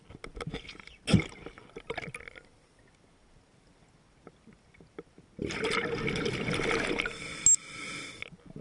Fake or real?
real